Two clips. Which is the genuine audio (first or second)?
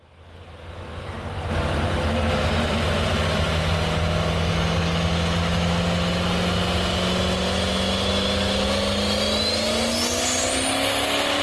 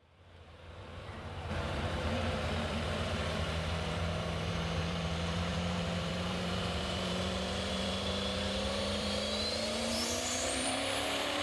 first